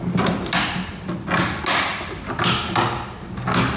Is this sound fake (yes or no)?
no